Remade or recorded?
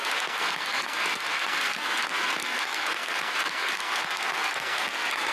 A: remade